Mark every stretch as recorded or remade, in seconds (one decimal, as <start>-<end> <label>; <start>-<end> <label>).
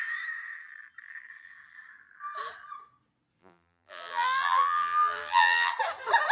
0.0-3.4 recorded; 3.4-5.7 remade; 5.7-6.3 recorded